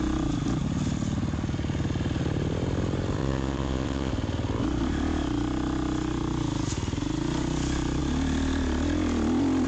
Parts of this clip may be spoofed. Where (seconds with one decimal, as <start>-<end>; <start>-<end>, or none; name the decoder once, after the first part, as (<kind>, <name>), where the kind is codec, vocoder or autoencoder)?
3.2-4.1 (vocoder, Vocos)